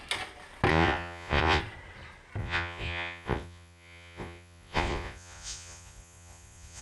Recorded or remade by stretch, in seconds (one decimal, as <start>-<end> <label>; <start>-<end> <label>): 0.0-0.7 recorded; 0.7-1.6 remade; 1.6-2.4 recorded; 2.4-6.8 remade

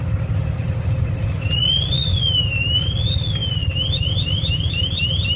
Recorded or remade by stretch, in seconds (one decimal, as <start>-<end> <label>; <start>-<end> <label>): 0.0-1.6 recorded; 1.6-2.3 remade; 2.3-5.4 recorded

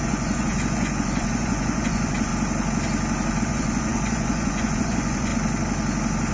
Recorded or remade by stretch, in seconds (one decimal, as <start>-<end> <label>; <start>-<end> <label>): 0.0-2.3 remade; 2.3-3.4 recorded; 3.4-5.3 remade; 5.3-6.3 recorded

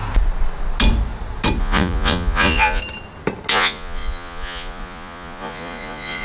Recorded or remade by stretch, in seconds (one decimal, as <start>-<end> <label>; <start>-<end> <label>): 0.0-1.6 recorded; 1.6-2.8 remade; 2.8-3.5 recorded; 3.5-6.2 remade

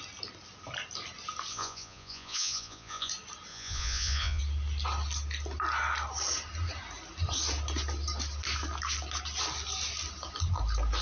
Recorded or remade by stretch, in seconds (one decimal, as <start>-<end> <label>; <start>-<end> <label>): 0.0-1.5 recorded; 1.5-3.1 remade; 3.1-3.5 recorded; 3.5-4.4 remade; 4.4-11.0 recorded

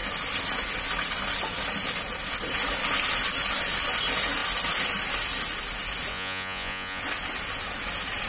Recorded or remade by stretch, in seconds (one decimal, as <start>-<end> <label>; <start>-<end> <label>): 0.0-6.1 recorded; 6.1-7.0 remade; 7.0-8.3 recorded

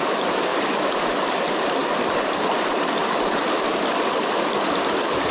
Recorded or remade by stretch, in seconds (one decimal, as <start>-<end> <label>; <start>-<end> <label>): 0.0-5.3 recorded

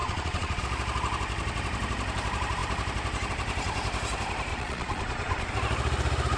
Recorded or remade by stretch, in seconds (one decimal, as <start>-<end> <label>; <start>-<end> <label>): 0.0-0.6 remade; 0.6-4.5 recorded; 4.5-5.5 remade; 5.5-6.4 recorded